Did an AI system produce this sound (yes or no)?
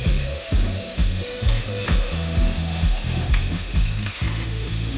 yes